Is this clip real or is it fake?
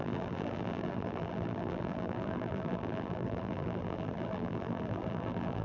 fake